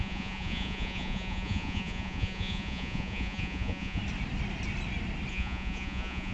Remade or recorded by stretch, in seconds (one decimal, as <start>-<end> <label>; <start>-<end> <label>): 0.0-4.0 remade; 4.0-5.3 recorded; 5.3-6.3 remade